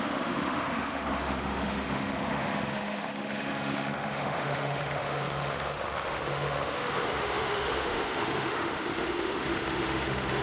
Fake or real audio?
fake